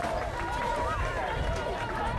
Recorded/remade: remade